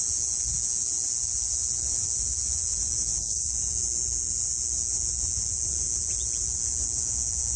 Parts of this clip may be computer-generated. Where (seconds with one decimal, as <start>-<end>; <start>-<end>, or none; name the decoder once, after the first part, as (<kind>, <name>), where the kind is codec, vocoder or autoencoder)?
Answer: none

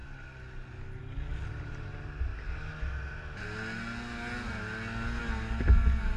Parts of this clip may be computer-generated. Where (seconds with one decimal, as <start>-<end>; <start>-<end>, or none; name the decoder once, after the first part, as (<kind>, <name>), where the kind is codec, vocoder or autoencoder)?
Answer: none

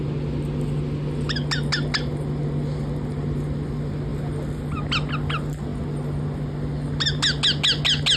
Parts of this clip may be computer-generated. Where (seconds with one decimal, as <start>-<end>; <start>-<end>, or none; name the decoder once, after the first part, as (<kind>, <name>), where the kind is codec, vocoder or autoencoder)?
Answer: none

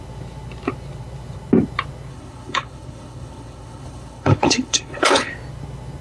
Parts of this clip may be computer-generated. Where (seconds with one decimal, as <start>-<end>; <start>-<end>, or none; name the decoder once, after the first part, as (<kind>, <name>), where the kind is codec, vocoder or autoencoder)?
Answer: 2.1-5.3 (codec, HILCodec)

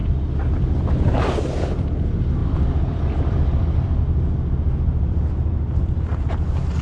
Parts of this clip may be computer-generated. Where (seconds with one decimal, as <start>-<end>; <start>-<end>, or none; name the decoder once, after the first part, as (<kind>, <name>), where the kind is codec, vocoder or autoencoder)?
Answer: 0.0-0.6 (vocoder, BigVGAN v2); 2.4-4.0

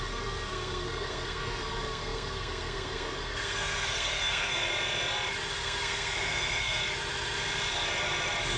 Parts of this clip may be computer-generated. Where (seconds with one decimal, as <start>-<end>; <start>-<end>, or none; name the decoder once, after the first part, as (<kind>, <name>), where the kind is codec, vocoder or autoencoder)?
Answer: 0.0-4.7 (codec, SNAC); 5.5-6.8

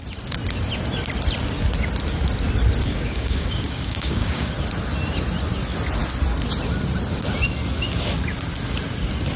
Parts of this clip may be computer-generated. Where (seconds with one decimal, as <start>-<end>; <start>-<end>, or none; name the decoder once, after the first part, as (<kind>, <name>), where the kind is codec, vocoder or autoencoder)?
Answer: 2.8-4.5 (codec, DAC)